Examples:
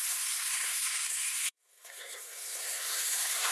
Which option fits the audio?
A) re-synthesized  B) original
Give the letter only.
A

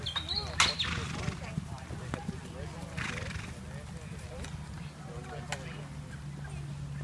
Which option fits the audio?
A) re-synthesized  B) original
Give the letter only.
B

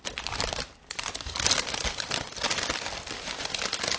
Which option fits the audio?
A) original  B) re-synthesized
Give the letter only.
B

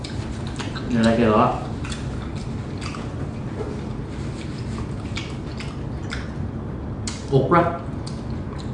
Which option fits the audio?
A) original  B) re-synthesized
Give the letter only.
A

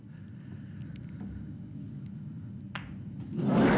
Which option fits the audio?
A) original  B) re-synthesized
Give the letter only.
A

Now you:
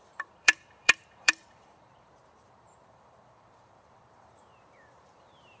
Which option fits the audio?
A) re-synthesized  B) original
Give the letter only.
A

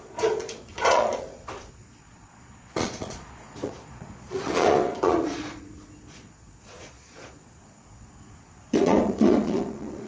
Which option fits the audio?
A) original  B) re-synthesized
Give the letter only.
B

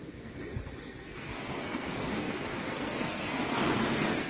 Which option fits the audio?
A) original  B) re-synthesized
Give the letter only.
B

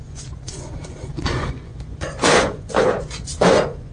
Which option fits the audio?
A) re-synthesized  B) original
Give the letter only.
A